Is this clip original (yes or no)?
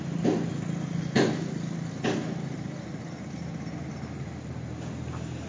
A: yes